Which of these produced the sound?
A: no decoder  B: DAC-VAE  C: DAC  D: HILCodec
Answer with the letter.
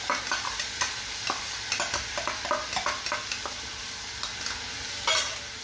A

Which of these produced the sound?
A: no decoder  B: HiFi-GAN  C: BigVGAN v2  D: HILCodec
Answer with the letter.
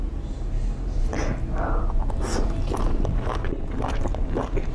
A